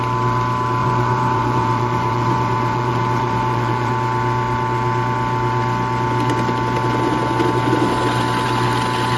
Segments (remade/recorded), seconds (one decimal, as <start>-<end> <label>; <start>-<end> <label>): 0.0-0.8 recorded; 0.8-3.9 remade; 3.9-9.2 recorded